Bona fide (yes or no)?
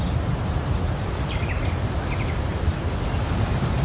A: no